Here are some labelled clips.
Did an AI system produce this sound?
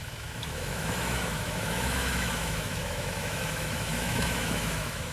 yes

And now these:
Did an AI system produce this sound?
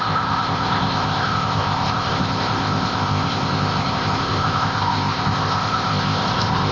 yes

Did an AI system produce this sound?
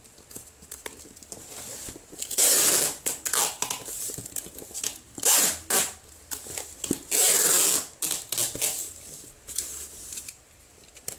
no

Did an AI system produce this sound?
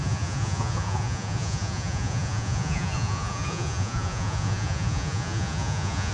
yes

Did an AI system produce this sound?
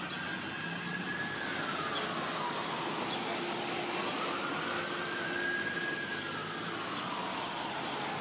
no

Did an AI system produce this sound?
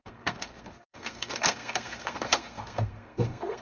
yes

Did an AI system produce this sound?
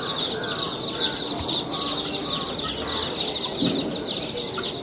no